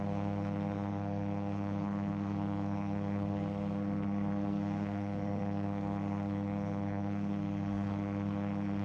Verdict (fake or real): fake